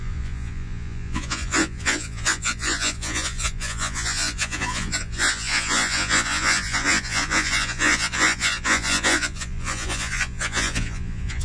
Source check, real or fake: fake